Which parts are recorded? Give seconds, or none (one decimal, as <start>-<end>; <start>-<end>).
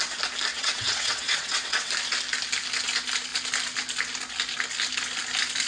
0.0-0.5; 1.9-5.7